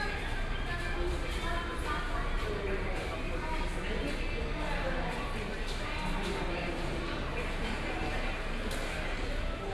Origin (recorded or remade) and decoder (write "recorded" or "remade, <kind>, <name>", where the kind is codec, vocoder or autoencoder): recorded